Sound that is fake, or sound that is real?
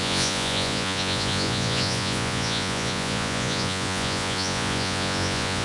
fake